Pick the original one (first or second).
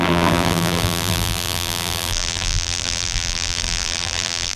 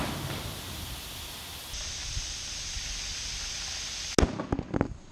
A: second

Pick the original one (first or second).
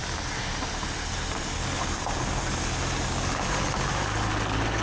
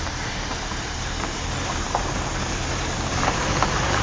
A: first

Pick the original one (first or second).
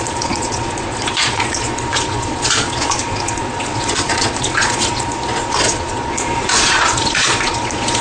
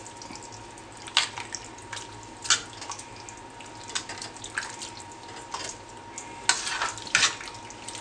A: second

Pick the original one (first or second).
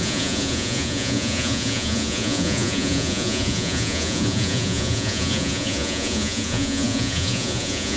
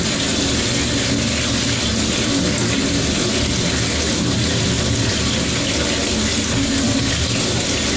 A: second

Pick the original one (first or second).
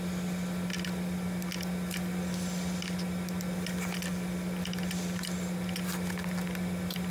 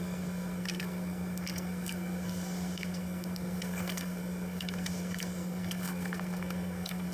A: first